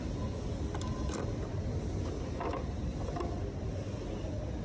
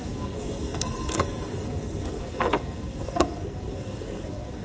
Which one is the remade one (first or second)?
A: second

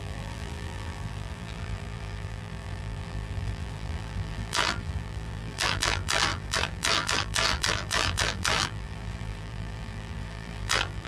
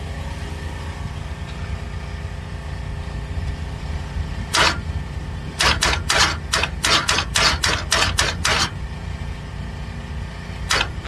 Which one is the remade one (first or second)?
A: first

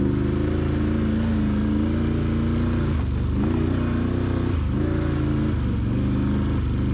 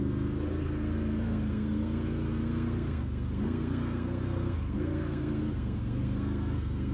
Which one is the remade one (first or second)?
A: second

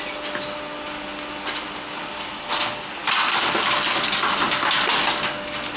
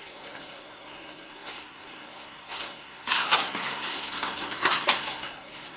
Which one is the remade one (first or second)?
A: second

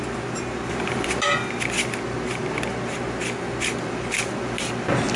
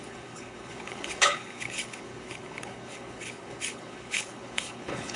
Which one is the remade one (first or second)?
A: second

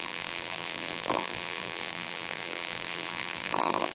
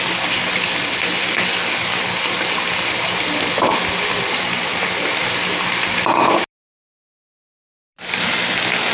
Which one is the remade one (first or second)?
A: first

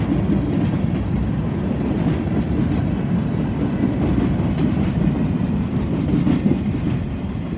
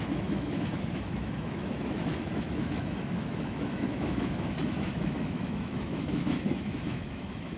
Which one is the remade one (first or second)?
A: second